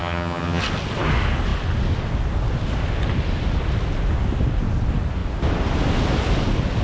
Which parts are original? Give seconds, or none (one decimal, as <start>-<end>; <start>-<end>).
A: 0.6-6.8